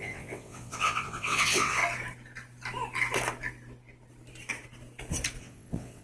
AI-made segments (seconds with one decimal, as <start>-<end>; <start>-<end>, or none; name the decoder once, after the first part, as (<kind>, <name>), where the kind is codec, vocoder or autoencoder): 0.0-1.8 (vocoder, WaveNeXt); 5.4-6.0